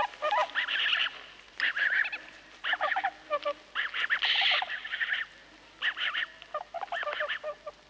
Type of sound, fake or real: real